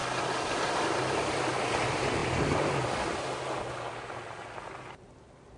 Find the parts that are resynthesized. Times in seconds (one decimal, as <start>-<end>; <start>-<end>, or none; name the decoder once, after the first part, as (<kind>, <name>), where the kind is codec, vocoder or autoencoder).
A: none